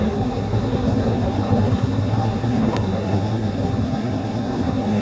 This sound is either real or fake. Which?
fake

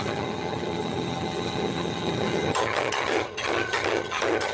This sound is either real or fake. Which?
fake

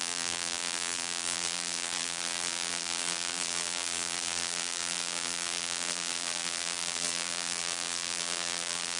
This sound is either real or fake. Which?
fake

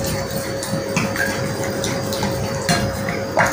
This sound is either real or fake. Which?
real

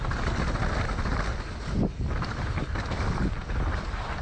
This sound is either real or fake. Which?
real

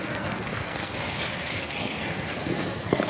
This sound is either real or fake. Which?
fake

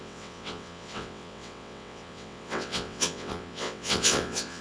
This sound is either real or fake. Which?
fake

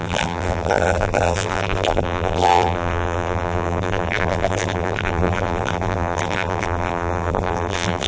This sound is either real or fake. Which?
fake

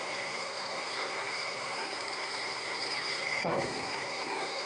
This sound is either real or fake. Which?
fake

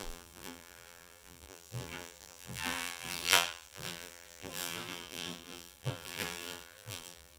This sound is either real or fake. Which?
fake